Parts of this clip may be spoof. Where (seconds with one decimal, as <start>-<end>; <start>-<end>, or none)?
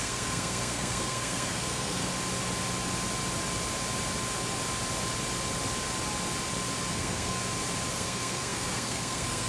0.0-2.1; 6.9-7.4; 7.9-9.5